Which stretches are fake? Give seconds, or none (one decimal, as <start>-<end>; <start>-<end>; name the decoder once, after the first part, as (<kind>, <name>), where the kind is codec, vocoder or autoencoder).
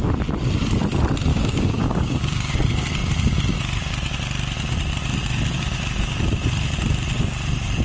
1.3-2.5 (codec, DAC)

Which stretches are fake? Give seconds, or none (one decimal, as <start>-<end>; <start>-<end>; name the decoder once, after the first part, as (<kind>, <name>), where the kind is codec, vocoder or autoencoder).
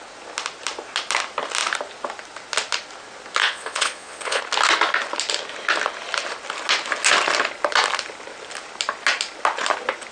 3.4-4.4 (vocoder, Vocos)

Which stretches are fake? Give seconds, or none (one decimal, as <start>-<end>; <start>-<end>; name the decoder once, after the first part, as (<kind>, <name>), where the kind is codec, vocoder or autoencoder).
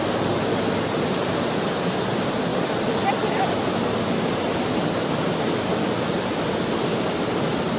2.5-3.4 (vocoder, BigVGAN v2)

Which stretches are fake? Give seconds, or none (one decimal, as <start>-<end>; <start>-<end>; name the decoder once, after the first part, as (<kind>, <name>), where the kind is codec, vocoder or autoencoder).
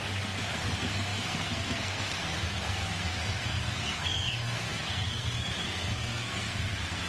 0.0-7.1 (codec, SNAC)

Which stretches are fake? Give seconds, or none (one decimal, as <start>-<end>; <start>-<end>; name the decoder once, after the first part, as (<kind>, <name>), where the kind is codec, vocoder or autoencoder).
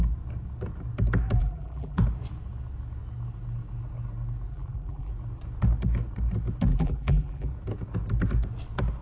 1.4-2.0 (vocoder, BigVGAN v2); 4.5-5.1; 6.7-7.5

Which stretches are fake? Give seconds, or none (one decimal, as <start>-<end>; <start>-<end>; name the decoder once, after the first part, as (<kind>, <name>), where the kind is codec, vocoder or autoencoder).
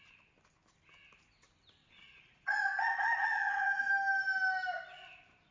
1.8-3.9 (vocoder, Vocos)